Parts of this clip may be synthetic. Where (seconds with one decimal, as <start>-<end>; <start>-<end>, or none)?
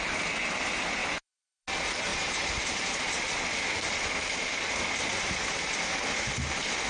1.0-1.6; 2.1-3.3